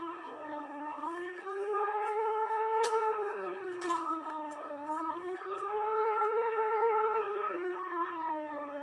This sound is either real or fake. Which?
fake